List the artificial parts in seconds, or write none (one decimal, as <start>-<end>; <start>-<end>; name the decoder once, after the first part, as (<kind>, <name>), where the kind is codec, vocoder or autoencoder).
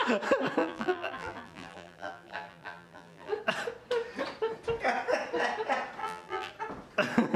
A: 0.6-3.3 (vocoder, BigVGAN v2); 6.0-6.5